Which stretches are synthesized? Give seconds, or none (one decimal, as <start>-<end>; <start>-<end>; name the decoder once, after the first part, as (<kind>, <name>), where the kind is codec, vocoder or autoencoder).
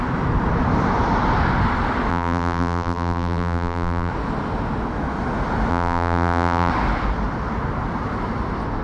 2.1-4.1 (vocoder, BigVGAN v2); 5.7-6.7